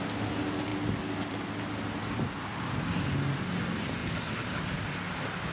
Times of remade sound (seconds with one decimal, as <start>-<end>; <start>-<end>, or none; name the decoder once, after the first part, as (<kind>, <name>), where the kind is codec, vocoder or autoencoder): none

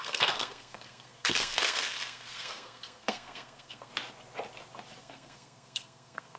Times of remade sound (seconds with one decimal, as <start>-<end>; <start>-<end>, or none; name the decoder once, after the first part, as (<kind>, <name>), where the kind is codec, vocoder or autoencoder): 0.0-3.9 (codec, SNAC); 5.0-6.4

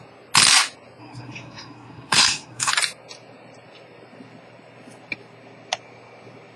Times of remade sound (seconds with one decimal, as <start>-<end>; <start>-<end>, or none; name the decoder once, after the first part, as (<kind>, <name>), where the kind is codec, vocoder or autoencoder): 1.0-2.7 (codec, SNAC)

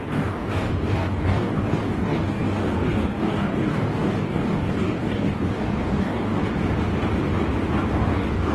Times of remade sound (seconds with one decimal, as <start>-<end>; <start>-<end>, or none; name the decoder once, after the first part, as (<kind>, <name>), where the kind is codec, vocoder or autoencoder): 0.0-6.4 (codec, DAC); 7.9-8.5